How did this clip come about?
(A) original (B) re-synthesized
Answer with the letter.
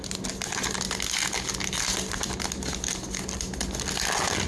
A